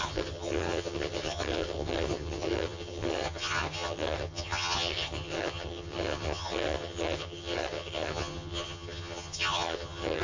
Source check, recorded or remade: remade